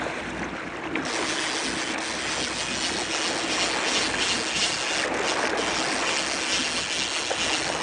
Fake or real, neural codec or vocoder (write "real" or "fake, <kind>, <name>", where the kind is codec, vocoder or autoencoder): real